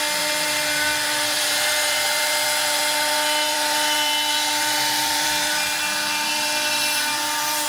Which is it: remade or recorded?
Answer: remade